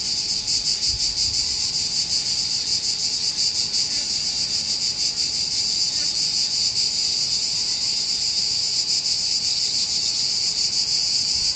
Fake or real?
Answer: real